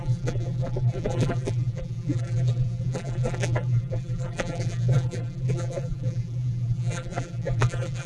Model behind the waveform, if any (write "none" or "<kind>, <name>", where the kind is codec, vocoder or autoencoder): vocoder, BigVGAN v2